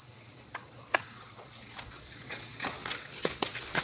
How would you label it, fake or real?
fake